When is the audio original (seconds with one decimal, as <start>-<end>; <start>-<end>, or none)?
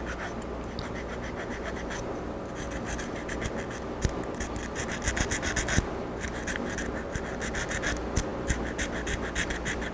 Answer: 0.0-9.9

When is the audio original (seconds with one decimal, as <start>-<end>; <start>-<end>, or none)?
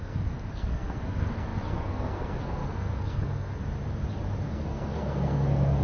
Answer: 3.6-4.5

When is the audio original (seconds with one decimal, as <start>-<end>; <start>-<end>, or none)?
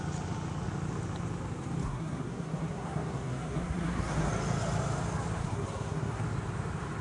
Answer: 0.0-1.8; 4.3-5.4; 6.2-7.0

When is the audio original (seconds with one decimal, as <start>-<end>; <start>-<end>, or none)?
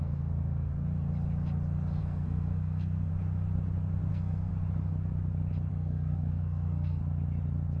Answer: 0.7-2.0; 3.1-4.1; 4.5-5.7; 7.0-7.8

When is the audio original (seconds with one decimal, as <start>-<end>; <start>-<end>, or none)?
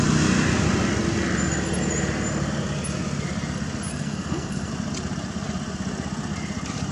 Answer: 0.0-3.9; 4.7-6.9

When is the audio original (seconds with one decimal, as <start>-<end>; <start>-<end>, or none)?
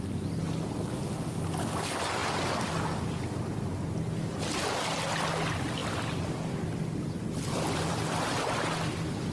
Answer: 0.0-9.3